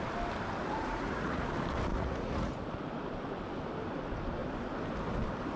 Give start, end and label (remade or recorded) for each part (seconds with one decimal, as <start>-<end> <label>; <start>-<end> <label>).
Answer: 0.0-0.6 recorded; 0.6-1.5 remade; 1.5-1.9 recorded; 1.9-2.7 remade; 2.7-5.6 recorded